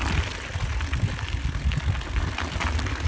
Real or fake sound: real